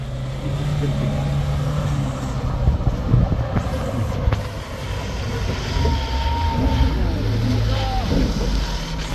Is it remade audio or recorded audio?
recorded